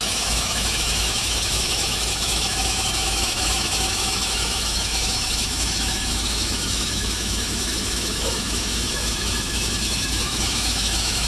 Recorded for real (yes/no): no